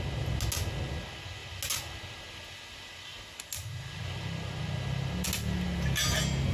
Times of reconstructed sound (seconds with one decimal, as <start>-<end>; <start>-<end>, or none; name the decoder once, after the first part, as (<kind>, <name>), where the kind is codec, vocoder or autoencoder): none